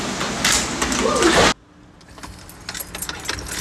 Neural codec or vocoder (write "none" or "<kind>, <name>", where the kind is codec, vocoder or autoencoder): none